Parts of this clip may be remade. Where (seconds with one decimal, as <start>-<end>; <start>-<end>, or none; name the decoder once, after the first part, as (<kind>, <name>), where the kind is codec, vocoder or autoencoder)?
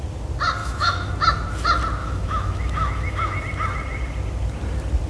0.6-1.1 (autoencoder, DAC-VAE); 2.0-3.4